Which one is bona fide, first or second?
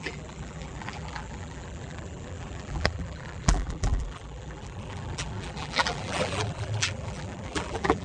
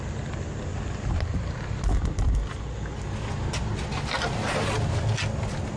second